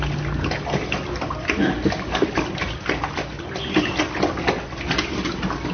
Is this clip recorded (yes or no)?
yes